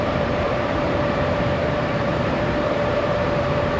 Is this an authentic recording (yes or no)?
no